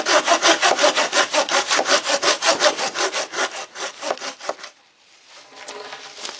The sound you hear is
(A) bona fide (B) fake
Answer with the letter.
A